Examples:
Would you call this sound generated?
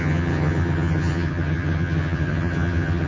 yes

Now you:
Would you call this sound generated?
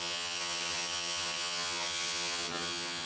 yes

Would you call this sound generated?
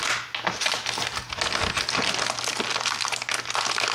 no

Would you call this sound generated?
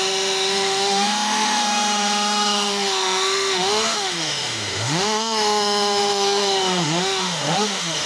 yes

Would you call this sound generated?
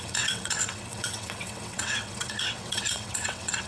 yes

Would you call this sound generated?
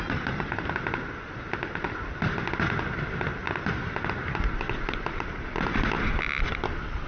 no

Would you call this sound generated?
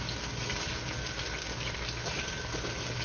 no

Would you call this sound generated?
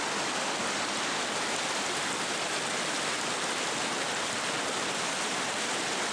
no